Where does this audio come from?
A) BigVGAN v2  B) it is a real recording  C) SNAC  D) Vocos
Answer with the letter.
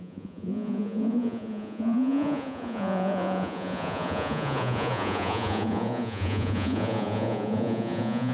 D